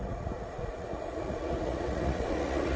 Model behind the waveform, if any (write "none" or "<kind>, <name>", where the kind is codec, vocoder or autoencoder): vocoder, Vocos